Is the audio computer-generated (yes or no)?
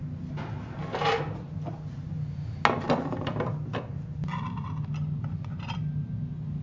no